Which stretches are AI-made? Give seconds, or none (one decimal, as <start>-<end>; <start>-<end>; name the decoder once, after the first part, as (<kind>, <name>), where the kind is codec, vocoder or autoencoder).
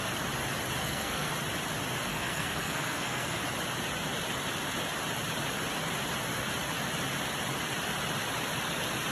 0.8-1.3 (codec, SNAC); 2.1-3.4